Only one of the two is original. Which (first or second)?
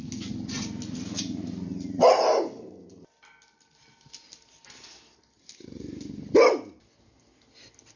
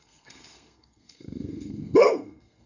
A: first